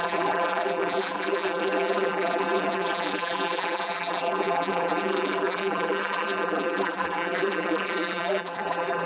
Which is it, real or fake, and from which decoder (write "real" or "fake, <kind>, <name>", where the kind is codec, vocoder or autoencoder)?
fake, vocoder, BigVGAN v2